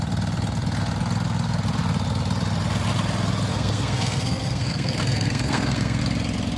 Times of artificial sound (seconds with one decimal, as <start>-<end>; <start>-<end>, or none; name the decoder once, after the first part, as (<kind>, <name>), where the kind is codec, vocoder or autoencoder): 3.5-6.0 (codec, SNAC)